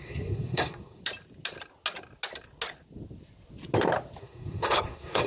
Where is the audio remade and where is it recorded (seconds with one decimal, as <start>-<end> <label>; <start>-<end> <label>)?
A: 0.0-1.0 remade; 1.0-4.2 recorded; 4.2-5.3 remade